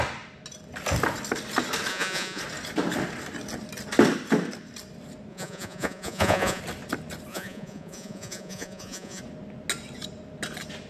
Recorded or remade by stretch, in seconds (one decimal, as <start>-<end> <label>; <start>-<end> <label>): 0.0-1.9 recorded; 1.9-2.4 remade; 2.4-5.3 recorded; 5.3-6.6 remade; 6.6-7.3 recorded; 7.3-9.2 remade; 9.2-10.9 recorded